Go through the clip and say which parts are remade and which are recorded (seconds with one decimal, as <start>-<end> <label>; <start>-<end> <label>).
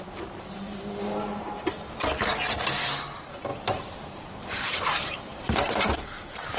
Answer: 0.0-6.6 remade